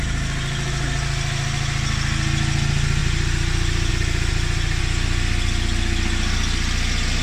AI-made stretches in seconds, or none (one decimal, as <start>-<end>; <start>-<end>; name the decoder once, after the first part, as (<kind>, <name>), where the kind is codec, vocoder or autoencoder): 3.0-3.9 (vocoder, BigVGAN v2); 4.3-4.8